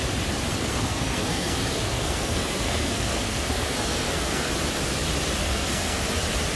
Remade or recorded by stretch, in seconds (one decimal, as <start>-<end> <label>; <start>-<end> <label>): 0.0-0.5 recorded; 0.5-4.5 remade; 4.5-5.4 recorded; 5.4-6.0 remade; 6.0-6.6 recorded